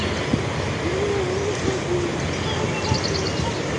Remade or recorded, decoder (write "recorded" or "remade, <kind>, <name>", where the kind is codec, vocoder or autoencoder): recorded